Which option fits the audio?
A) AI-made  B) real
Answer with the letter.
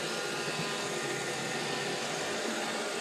B